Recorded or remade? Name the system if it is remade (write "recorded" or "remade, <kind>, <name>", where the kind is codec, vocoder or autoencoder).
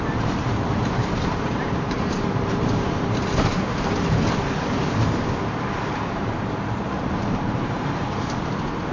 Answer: remade, vocoder, BigVGAN v2